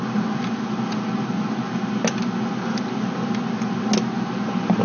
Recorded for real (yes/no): yes